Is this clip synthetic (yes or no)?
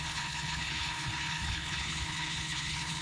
yes